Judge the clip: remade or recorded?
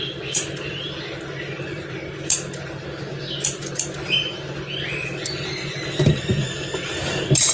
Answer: remade